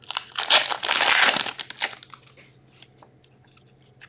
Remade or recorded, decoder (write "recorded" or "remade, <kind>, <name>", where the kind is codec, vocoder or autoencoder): recorded